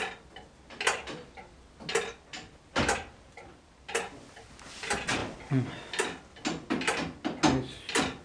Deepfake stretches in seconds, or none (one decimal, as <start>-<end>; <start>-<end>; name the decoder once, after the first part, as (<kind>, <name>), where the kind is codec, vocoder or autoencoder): none